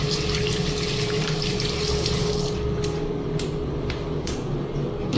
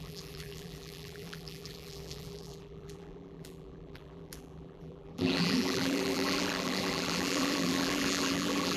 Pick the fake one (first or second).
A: second